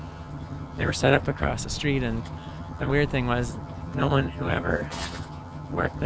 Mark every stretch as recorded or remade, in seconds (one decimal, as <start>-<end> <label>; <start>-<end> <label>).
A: 0.0-1.5 remade; 1.5-2.2 recorded; 2.2-2.9 remade; 2.9-3.5 recorded; 3.5-6.1 remade